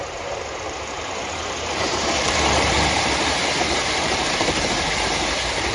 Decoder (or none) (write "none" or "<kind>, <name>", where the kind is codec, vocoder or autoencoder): vocoder, BigVGAN v2